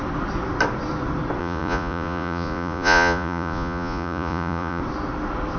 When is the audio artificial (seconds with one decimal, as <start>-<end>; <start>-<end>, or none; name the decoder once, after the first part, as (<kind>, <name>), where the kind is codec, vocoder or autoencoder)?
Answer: 1.4-4.8 (vocoder, Vocos)